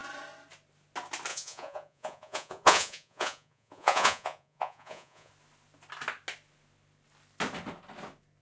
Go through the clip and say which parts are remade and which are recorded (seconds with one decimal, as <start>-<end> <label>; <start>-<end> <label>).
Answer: 0.0-1.3 recorded; 1.3-5.3 remade; 5.3-8.4 recorded

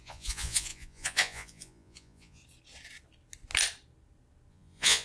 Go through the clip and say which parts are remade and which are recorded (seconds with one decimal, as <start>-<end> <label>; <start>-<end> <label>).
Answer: 0.0-2.4 remade; 2.4-4.5 recorded; 4.5-5.0 remade

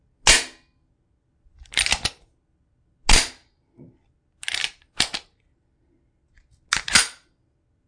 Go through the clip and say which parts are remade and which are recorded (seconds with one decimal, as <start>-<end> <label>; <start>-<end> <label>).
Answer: 0.0-7.9 recorded

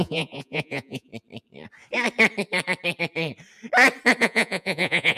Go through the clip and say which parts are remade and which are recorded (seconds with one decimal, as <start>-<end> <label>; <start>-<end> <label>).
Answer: 0.0-1.1 remade; 1.1-4.2 recorded; 4.2-5.2 remade